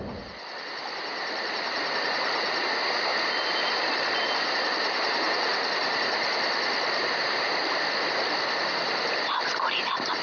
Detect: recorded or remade recorded